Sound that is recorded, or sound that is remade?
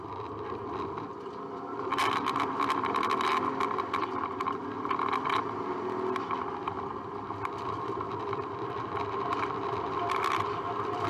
remade